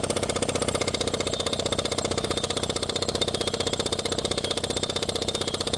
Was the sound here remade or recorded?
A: recorded